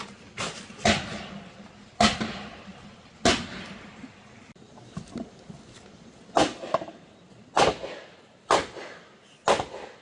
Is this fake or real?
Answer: real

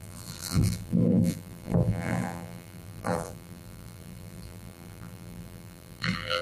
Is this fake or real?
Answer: fake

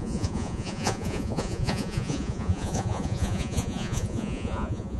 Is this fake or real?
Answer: fake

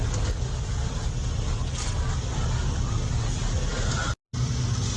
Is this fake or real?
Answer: real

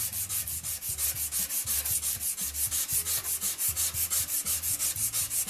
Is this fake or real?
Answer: real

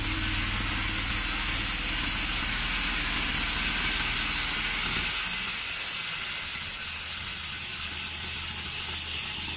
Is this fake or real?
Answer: real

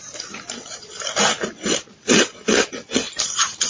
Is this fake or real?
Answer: real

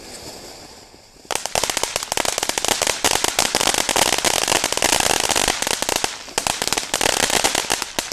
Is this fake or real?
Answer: real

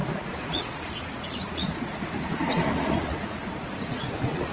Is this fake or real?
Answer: fake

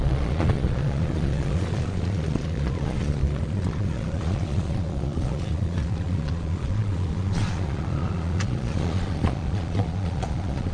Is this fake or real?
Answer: fake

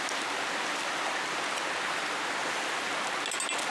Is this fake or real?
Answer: real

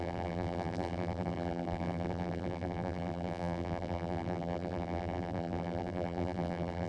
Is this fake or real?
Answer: fake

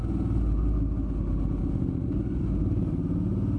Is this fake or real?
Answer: real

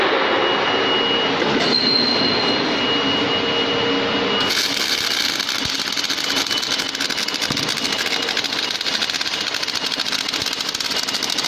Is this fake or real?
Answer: real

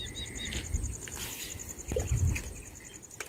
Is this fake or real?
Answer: real